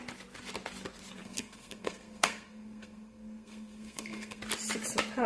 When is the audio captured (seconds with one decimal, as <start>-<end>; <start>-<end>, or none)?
0.0-1.2; 4.4-5.3